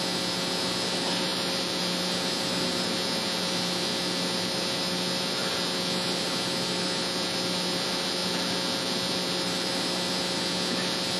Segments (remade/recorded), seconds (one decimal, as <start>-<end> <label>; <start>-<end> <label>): 0.0-11.2 recorded